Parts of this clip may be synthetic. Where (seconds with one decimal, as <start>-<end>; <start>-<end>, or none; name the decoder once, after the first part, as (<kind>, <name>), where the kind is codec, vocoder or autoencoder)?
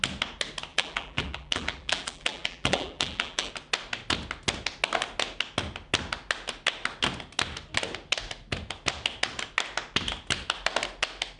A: 0.7-3.5 (vocoder, BigVGAN v2)